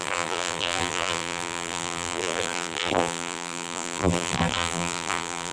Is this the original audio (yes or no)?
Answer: no